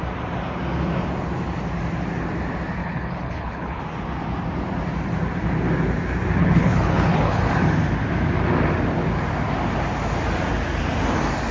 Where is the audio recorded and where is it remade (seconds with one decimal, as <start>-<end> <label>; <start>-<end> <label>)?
0.0-2.8 recorded; 2.8-3.8 remade; 3.8-6.4 recorded; 6.4-7.4 remade; 7.4-11.5 recorded